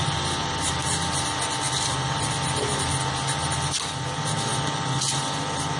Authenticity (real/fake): real